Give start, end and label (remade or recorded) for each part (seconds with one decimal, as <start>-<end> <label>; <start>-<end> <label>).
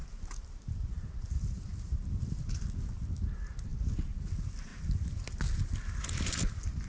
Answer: 0.0-6.9 recorded